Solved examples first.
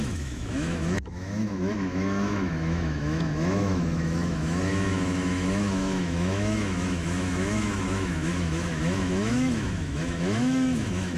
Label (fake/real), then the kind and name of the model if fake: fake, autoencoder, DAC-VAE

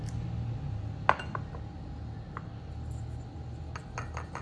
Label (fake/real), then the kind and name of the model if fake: real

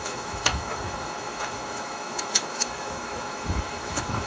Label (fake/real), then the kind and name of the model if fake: fake, autoencoder, DAC-VAE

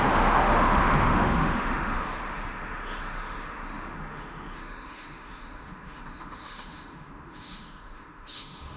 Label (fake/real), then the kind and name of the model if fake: fake, autoencoder, DAC-VAE